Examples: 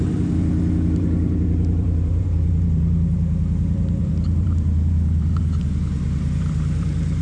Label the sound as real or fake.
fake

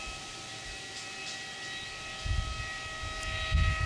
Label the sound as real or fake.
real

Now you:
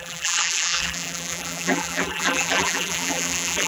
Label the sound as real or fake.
fake